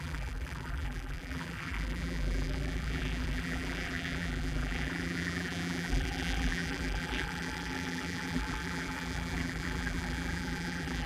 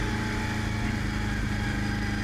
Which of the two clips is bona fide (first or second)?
second